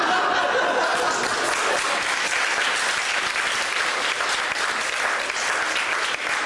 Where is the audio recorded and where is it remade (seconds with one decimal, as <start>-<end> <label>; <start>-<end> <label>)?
0.0-6.5 recorded